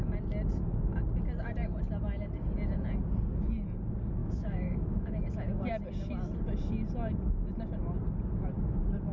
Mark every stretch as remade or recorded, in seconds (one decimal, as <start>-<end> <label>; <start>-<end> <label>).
0.0-4.2 recorded; 4.2-5.6 remade; 5.6-9.1 recorded